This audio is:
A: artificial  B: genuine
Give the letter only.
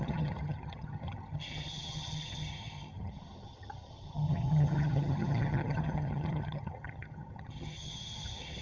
A